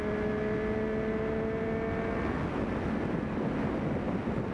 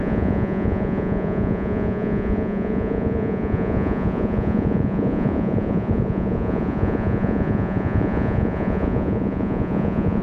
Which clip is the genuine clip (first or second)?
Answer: first